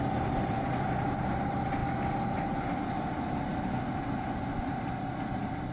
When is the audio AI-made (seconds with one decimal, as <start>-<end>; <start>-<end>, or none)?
0.0-1.8; 4.5-5.7